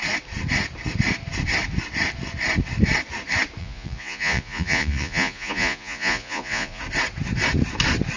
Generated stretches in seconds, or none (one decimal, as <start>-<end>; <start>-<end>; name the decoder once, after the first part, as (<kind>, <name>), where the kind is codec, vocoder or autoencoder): 3.6-6.8 (vocoder, Vocos)